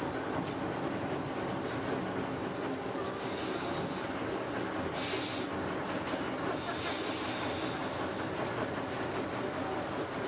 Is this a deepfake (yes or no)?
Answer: no